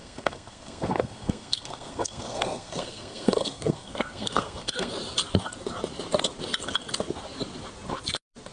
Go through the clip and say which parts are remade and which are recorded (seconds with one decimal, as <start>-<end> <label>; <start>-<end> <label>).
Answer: 0.0-4.9 remade; 4.9-8.5 recorded

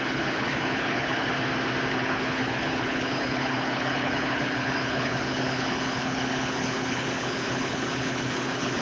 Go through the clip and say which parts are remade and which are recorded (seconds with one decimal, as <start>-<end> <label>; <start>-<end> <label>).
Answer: 0.0-1.3 remade; 1.3-1.9 recorded; 1.9-8.8 remade

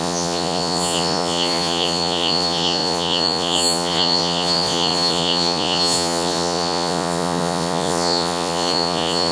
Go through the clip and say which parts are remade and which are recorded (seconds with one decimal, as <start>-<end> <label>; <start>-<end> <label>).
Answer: 0.0-9.3 remade